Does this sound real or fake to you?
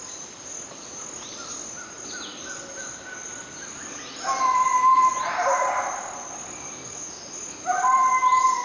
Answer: real